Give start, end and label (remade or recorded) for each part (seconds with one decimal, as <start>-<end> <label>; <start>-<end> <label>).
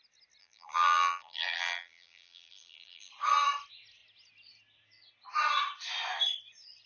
0.0-0.4 recorded; 0.4-3.1 remade; 3.1-6.9 recorded